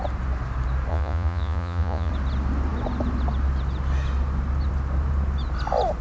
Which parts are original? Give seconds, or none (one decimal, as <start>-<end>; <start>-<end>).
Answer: 0.0-0.9; 2.1-6.0